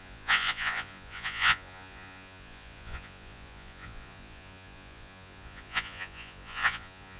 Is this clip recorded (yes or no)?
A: no